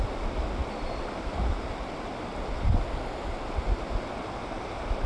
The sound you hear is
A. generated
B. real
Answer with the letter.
B